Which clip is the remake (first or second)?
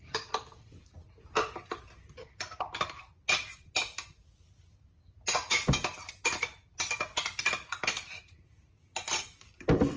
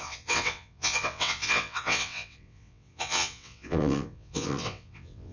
second